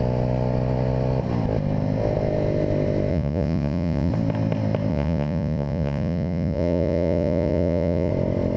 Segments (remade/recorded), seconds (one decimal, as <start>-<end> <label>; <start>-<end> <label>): 0.0-3.1 recorded; 3.1-4.1 remade; 4.1-4.9 recorded; 4.9-8.1 remade; 8.1-8.6 recorded